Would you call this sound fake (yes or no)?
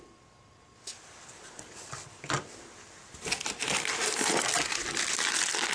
no